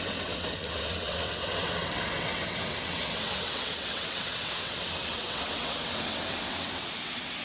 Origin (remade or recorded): remade